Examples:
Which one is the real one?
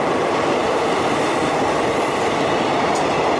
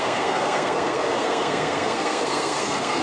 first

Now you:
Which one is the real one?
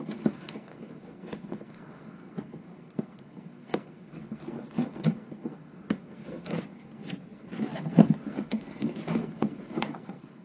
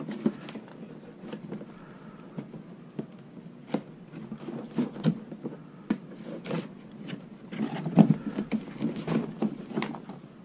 second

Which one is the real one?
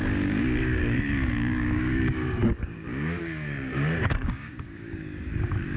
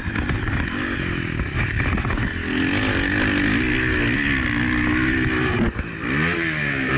second